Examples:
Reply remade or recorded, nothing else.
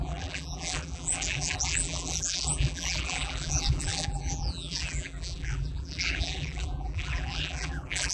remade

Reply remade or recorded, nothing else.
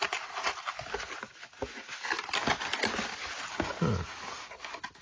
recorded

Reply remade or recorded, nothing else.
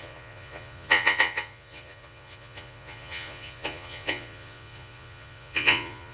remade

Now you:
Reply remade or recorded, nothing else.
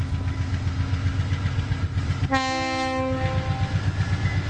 recorded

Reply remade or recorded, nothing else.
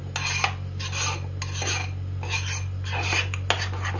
recorded